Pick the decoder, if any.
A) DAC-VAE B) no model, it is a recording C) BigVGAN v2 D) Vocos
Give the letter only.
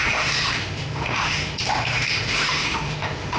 A